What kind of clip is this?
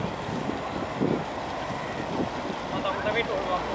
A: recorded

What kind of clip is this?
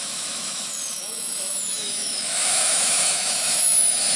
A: remade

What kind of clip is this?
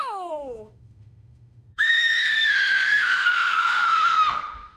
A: remade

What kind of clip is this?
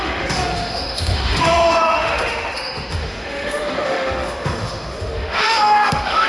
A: remade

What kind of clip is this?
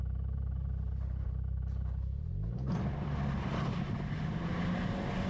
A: recorded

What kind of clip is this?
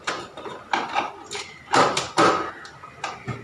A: recorded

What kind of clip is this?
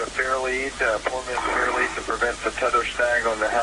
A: recorded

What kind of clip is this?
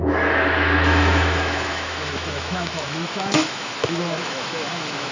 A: remade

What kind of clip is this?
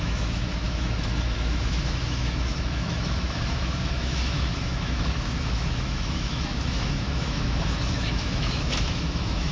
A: remade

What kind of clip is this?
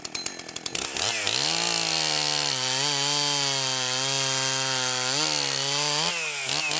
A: recorded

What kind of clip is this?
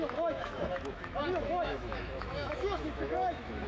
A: remade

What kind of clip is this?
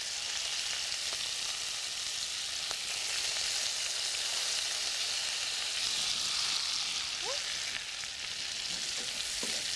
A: recorded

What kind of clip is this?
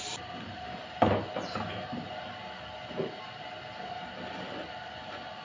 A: recorded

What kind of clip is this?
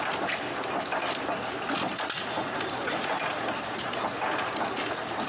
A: recorded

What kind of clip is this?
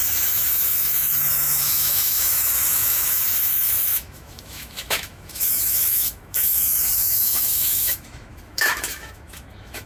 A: remade